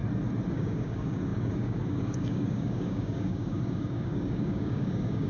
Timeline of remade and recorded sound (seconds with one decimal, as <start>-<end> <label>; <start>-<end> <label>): 0.0-0.5 recorded; 0.5-5.3 remade